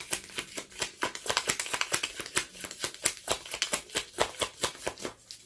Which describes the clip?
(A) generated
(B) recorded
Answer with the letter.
B